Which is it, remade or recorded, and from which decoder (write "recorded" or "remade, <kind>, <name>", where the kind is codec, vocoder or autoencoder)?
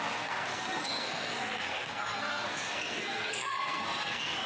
remade, codec, SNAC